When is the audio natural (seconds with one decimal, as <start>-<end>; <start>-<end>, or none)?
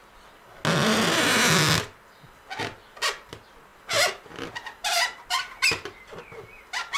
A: 0.0-7.0